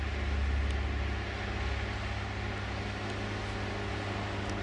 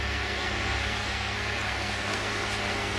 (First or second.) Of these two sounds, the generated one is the second